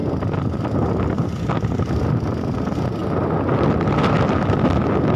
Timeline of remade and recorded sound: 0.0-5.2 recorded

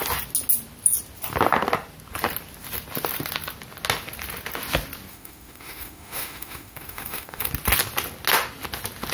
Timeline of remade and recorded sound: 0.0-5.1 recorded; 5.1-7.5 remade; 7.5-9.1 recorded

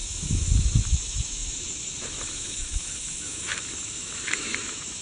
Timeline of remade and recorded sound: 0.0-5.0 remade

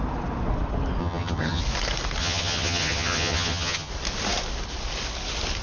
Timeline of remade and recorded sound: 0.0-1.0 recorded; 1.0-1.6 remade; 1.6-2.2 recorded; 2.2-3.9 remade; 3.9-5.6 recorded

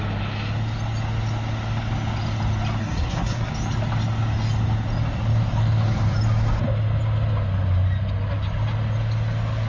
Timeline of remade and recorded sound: 0.0-2.8 recorded; 2.8-3.5 remade; 3.5-9.7 recorded

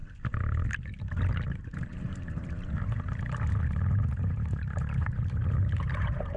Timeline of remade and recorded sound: 0.0-1.0 recorded; 1.0-6.4 remade

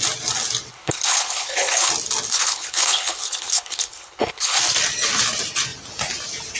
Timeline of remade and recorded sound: 0.0-0.7 recorded; 0.7-1.9 remade; 1.9-2.3 recorded; 2.3-4.6 remade; 4.6-6.6 recorded

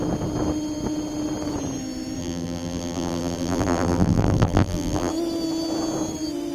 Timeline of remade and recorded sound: 0.0-2.2 recorded; 2.2-5.1 remade; 5.1-6.5 recorded